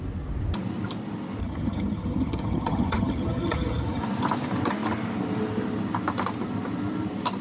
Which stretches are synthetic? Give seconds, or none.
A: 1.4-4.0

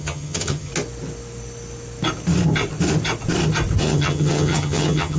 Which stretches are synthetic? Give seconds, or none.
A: 0.0-0.7; 3.8-5.2

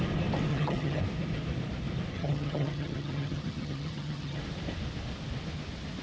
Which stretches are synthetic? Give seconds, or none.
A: 0.5-1.0; 2.1-4.4

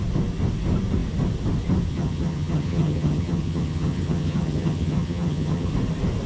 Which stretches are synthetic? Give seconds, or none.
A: 1.9-5.7

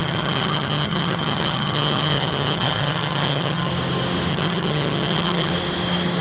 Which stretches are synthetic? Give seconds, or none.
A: 0.0-3.7; 4.3-5.5

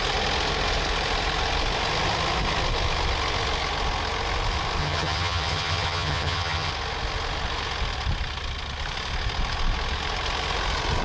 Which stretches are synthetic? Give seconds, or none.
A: 4.8-6.7

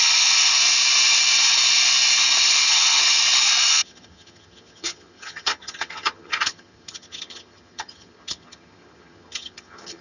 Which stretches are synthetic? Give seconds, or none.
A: 0.0-0.6; 2.4-3.2; 3.7-10.0

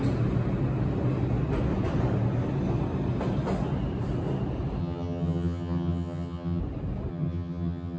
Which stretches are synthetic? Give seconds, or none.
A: 4.8-6.6; 7.1-8.0